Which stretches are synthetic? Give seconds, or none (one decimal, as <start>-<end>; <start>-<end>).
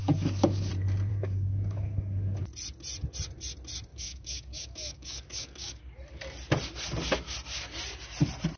0.0-0.7; 1.1-2.4; 3.9-5.8